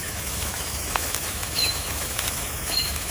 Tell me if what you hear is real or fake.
fake